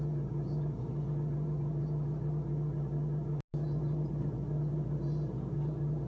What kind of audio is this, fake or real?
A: real